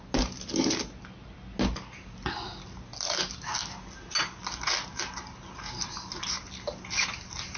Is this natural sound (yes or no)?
yes